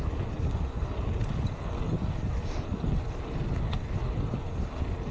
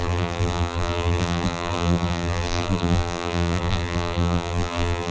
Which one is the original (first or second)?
first